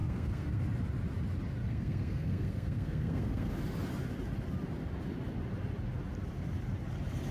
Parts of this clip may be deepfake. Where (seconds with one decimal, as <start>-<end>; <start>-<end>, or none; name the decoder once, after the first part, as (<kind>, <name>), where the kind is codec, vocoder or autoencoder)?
0.0-0.6 (codec, SNAC); 1.6-3.5